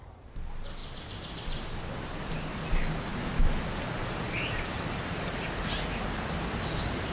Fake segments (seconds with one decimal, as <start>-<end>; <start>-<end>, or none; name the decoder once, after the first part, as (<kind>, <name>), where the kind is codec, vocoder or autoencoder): none

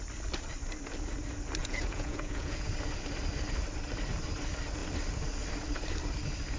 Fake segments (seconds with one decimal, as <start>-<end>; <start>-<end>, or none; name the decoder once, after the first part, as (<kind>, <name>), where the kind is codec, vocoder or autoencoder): 1.6-2.7 (vocoder, Vocos)

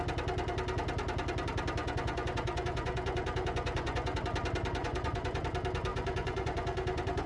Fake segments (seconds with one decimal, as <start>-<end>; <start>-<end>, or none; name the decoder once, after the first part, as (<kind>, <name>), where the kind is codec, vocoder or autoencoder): 1.8-4.2 (vocoder, Vocos); 4.8-5.4; 5.9-7.3